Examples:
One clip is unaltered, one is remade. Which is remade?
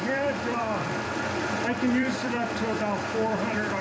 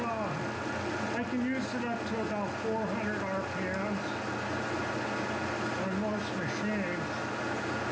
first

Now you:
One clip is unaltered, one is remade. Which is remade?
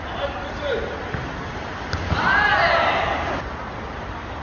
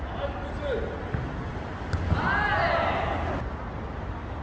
first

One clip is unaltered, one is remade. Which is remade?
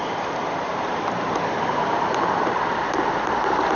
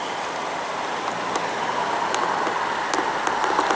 first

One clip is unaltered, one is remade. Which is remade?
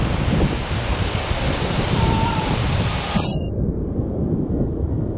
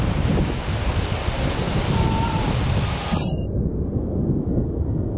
first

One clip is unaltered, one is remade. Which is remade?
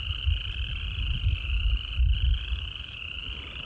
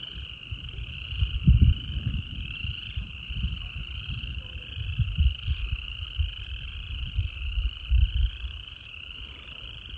second